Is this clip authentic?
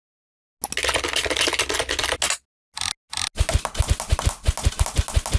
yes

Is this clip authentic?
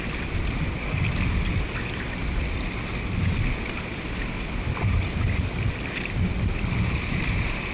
yes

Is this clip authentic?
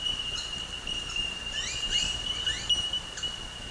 no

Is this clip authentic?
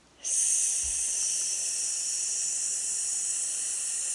yes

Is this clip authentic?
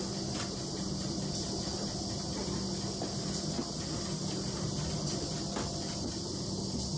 yes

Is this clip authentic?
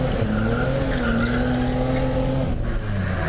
yes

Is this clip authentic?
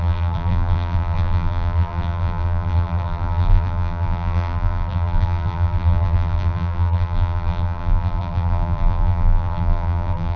no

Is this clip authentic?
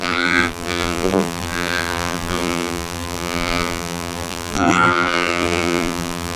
no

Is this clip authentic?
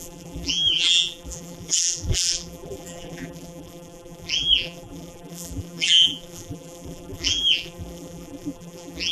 no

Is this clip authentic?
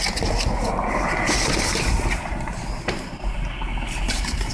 yes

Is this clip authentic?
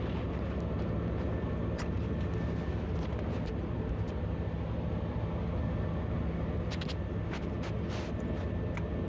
yes